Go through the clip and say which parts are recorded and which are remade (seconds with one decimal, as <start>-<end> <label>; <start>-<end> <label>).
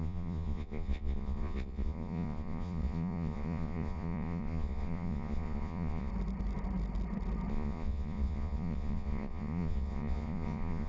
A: 0.0-6.1 remade; 6.1-7.5 recorded; 7.5-10.9 remade